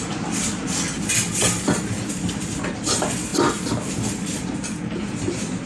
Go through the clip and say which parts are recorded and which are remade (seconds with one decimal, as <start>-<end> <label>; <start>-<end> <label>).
0.0-5.7 recorded